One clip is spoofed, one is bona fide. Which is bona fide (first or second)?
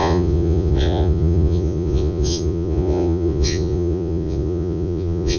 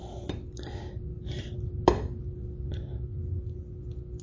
second